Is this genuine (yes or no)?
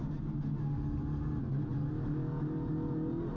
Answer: yes